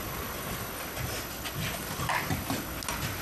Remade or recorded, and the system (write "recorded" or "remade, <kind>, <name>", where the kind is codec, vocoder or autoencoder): recorded